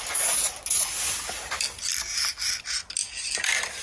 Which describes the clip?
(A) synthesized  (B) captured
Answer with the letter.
B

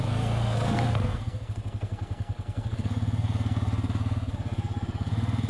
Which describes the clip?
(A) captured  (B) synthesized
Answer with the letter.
B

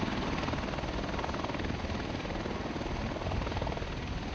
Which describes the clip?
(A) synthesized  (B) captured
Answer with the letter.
B